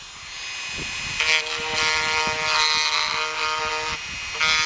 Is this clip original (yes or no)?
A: yes